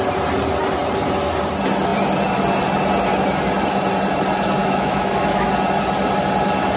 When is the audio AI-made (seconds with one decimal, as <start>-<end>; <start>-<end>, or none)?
4.6-5.5